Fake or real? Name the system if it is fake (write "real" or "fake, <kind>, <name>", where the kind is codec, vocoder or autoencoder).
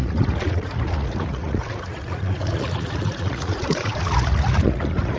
fake, vocoder, Vocos